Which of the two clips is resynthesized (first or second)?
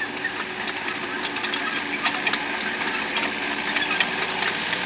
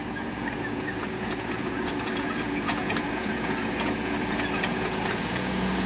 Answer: second